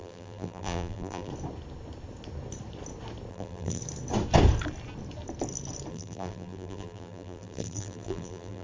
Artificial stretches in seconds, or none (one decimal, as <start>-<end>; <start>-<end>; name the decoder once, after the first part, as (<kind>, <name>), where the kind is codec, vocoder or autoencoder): 0.0-1.3 (vocoder, BigVGAN v2); 3.3-3.8; 5.9-8.6